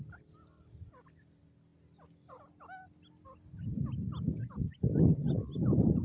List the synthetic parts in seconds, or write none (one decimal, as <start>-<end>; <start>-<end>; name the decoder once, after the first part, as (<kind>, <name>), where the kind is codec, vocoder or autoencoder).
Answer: none